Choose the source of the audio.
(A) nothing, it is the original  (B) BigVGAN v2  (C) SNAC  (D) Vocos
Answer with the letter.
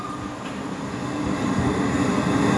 A